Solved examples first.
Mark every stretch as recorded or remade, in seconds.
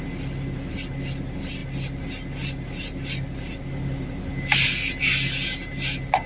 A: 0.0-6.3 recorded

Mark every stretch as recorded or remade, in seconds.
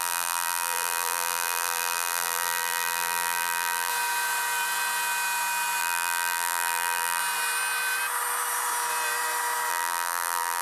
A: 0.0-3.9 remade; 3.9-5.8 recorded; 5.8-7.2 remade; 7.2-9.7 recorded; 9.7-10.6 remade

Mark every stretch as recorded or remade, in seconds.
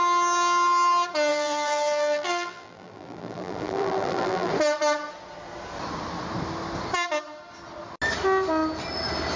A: 0.0-1.3 recorded; 1.3-4.5 remade; 4.5-9.4 recorded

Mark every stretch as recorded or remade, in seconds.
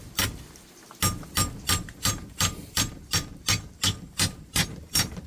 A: 0.0-1.6 recorded; 1.6-5.3 remade